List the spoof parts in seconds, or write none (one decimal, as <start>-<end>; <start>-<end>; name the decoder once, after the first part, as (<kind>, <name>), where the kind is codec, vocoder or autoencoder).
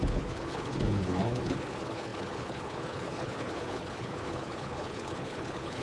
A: 0.0-5.8 (codec, HILCodec)